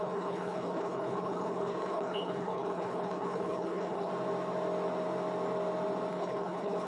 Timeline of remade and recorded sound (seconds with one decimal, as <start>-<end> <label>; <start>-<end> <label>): 0.0-4.1 remade; 4.1-6.1 recorded; 6.1-6.9 remade